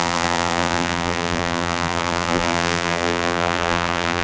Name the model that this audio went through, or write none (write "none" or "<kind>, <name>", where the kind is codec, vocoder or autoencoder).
vocoder, BigVGAN v2